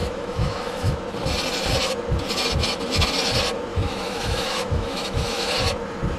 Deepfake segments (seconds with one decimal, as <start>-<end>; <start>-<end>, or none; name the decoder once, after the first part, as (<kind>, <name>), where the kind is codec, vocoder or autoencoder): 0.0-1.0 (autoencoder, DAC-VAE); 3.7-5.5